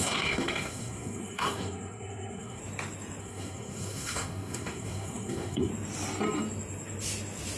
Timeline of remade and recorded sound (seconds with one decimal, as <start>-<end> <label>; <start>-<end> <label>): 0.0-2.6 remade; 2.6-3.2 recorded; 3.2-5.7 remade; 5.7-7.6 recorded